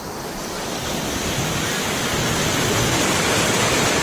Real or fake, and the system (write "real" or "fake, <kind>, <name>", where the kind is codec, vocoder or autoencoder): real